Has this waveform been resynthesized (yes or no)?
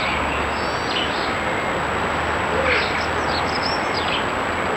no